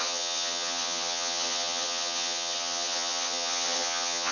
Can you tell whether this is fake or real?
fake